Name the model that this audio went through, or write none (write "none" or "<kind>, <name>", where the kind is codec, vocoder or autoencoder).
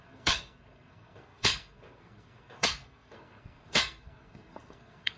codec, SNAC